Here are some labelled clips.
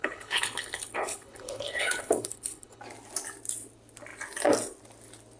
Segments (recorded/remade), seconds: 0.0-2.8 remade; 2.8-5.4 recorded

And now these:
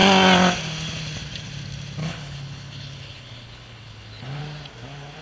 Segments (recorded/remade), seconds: 0.0-2.0 recorded; 2.0-4.4 remade; 4.4-5.2 recorded

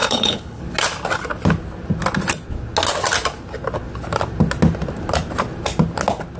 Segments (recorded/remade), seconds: 0.0-0.6 remade; 0.6-6.4 recorded

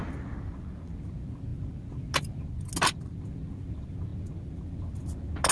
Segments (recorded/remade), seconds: 0.0-5.5 recorded

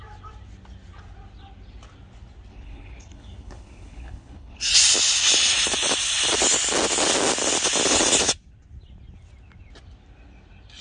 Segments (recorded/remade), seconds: 0.0-2.5 recorded; 2.5-4.7 remade; 4.7-10.8 recorded

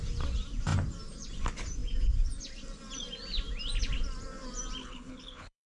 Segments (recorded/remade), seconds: 0.0-4.8 recorded; 4.8-5.7 remade

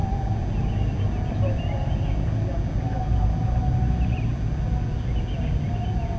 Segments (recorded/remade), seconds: 0.0-6.2 recorded